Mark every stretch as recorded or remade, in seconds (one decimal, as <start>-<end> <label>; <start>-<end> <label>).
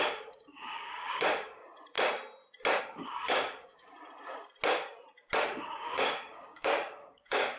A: 0.0-1.6 remade; 1.6-2.8 recorded; 2.8-3.9 remade; 3.9-5.4 recorded; 5.4-7.6 remade